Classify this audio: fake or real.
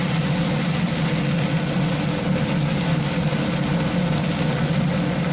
real